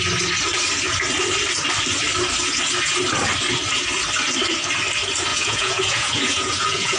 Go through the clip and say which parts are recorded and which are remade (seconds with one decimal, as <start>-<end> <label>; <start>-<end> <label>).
0.0-5.3 recorded; 5.3-7.0 remade